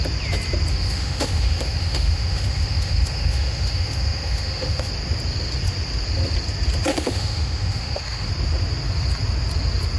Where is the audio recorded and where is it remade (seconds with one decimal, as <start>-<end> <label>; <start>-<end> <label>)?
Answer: 0.0-0.7 recorded; 0.7-4.9 remade; 4.9-6.9 recorded; 6.9-8.3 remade; 8.3-10.0 recorded